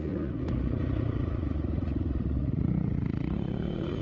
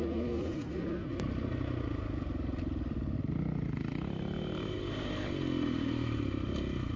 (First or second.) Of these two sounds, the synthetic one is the first